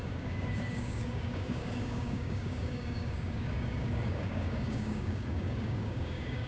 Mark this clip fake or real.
fake